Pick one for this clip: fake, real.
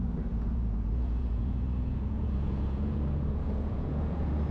fake